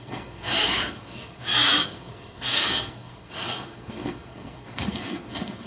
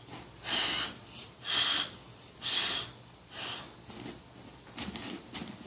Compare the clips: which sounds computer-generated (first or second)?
first